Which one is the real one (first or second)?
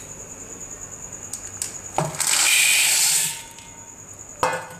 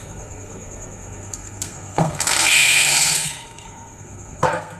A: first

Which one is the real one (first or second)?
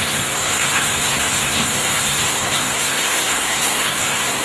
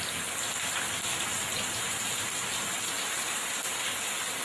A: second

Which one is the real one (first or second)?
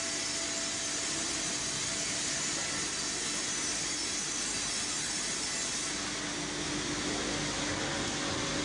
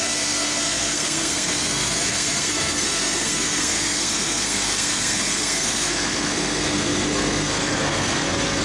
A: first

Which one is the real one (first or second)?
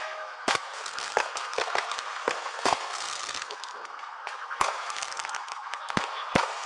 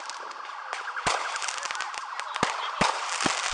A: second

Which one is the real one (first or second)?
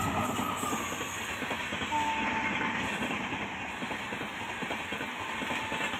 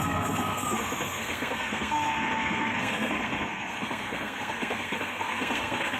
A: first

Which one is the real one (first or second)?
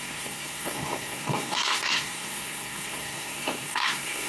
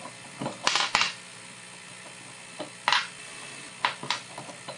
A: second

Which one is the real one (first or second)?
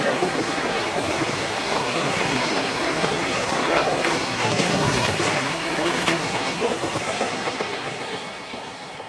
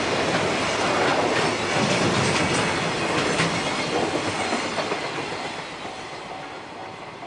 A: second